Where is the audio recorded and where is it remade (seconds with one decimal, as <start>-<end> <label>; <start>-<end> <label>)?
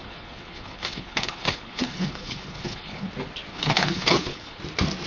0.0-3.1 remade; 3.1-3.5 recorded; 3.5-4.6 remade; 4.6-5.1 recorded